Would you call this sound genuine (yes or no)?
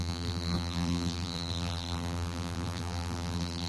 no